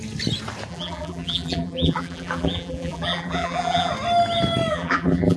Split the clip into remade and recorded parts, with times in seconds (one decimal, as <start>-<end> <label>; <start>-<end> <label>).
0.0-0.7 recorded; 0.7-3.9 remade; 3.9-4.7 recorded; 4.7-5.4 remade